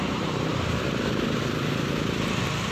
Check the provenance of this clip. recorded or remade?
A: recorded